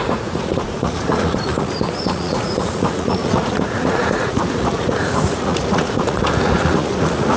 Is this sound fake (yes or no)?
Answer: yes